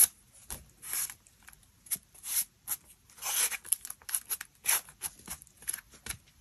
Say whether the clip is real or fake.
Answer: real